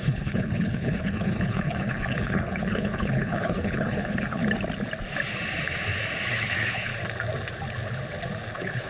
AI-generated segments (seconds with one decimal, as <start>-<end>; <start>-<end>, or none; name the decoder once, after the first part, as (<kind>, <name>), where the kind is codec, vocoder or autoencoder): 0.0-4.4 (codec, HILCodec); 6.3-6.9; 8.5-8.9